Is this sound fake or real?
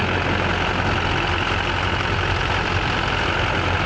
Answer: real